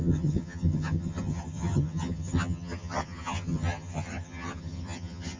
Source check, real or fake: fake